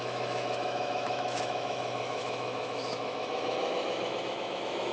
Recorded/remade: remade